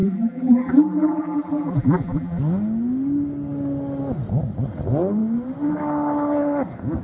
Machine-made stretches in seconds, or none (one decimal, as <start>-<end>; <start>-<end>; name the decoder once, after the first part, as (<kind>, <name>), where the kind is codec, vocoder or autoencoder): 0.0-2.4 (vocoder, BigVGAN v2)